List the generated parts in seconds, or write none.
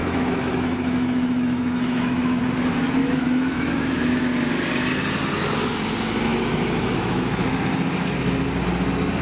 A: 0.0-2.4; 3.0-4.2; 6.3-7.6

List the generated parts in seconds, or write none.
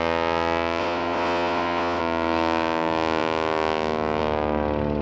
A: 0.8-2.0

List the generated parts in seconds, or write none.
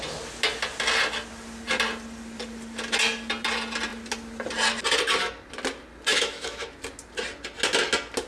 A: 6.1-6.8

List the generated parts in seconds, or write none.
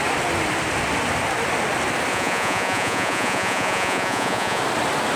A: 2.1-4.6